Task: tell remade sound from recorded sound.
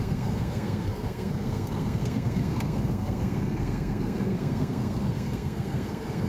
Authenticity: remade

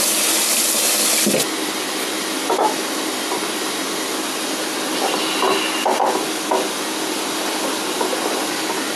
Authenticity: recorded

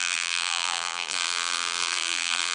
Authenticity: remade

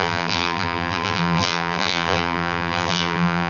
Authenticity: remade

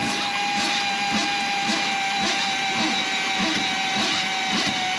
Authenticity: recorded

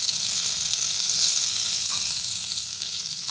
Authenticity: remade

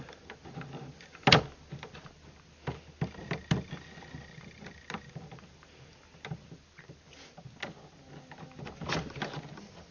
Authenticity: recorded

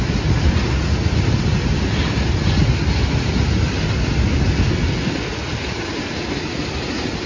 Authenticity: recorded